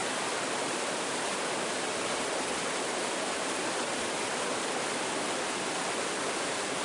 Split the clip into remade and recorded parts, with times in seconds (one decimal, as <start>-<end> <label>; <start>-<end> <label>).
0.0-6.8 recorded